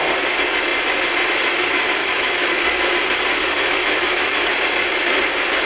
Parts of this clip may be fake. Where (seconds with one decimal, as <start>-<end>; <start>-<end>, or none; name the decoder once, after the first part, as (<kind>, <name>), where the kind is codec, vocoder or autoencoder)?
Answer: 2.0-2.5 (autoencoder, DAC-VAE); 3.4-4.5